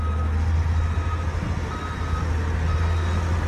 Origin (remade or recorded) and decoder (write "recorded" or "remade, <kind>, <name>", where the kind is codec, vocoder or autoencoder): recorded